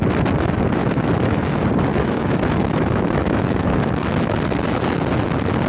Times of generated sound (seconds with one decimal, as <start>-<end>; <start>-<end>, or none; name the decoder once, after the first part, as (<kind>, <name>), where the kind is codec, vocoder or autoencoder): 0.8-1.4 (autoencoder, DAC-VAE); 1.9-5.0